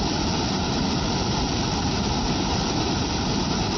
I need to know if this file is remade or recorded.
remade